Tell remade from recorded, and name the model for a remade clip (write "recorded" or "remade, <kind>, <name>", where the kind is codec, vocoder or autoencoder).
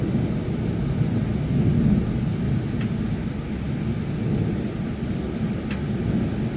recorded